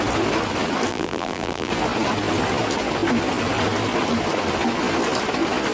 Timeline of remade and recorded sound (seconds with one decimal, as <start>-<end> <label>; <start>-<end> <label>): 0.0-0.9 recorded; 0.9-1.7 remade; 1.7-5.7 recorded

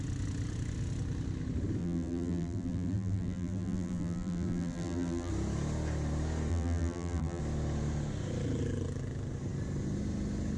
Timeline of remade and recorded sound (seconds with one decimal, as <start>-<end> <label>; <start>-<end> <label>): 0.0-1.8 recorded; 1.8-5.3 remade; 5.3-6.5 recorded; 6.5-7.4 remade; 7.4-10.6 recorded

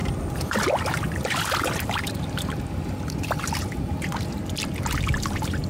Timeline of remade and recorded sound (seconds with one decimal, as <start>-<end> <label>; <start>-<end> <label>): 0.0-5.7 recorded

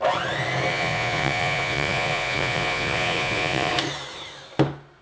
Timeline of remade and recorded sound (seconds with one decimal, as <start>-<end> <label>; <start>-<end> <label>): 0.0-0.7 recorded; 0.7-3.7 remade; 3.7-5.0 recorded

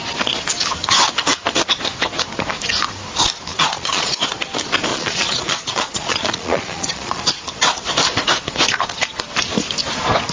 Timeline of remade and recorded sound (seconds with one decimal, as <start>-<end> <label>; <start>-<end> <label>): 0.0-3.5 recorded; 3.5-4.2 remade; 4.2-4.9 recorded; 4.9-7.2 remade; 7.2-10.3 recorded

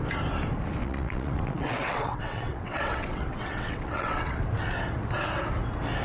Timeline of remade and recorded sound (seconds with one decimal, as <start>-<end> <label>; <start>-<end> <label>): 0.0-0.8 recorded; 0.8-4.4 remade; 4.4-6.0 recorded